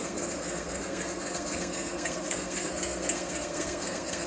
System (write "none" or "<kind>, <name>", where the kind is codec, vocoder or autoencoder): codec, SNAC